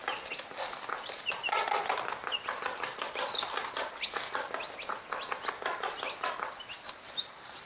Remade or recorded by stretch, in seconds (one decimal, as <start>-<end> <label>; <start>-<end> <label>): 0.0-7.7 recorded